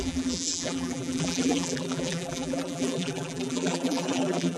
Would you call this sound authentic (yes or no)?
no